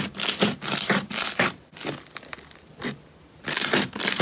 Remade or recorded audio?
recorded